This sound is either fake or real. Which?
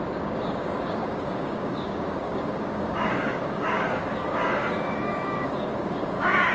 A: fake